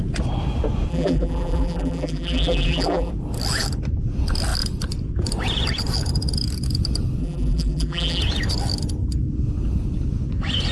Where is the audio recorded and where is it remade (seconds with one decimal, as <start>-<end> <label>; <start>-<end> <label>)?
0.0-0.9 recorded; 0.9-3.1 remade; 3.1-7.2 recorded; 7.2-8.2 remade; 8.2-10.7 recorded